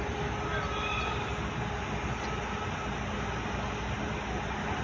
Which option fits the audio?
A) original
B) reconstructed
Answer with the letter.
A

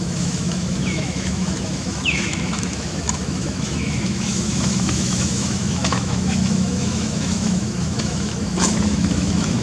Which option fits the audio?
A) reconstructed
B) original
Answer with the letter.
A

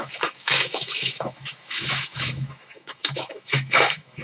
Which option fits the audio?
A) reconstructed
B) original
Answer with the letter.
A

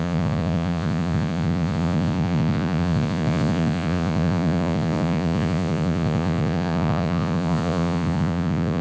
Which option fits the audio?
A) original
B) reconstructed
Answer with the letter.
B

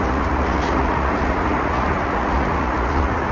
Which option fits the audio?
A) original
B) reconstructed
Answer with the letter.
B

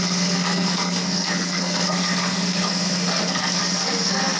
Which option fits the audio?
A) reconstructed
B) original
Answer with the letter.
A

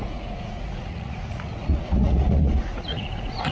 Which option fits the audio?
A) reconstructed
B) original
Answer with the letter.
A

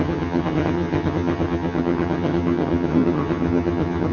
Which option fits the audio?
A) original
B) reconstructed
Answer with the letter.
B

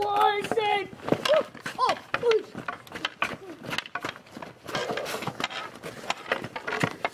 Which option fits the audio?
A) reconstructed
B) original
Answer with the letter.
B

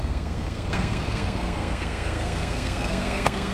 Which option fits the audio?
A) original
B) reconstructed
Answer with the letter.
B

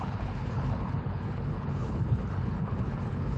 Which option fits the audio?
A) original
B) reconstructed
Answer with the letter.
B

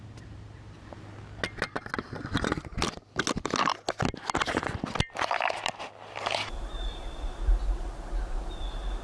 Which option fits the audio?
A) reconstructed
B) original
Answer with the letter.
B